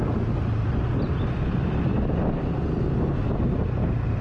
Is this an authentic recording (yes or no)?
yes